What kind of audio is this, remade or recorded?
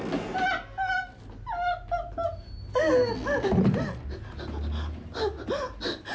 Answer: recorded